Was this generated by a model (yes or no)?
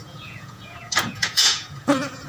yes